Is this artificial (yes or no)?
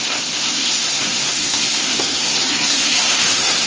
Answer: yes